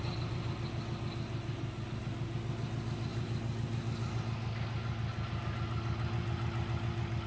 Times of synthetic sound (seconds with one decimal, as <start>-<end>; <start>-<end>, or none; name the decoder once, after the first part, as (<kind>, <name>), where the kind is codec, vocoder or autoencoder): none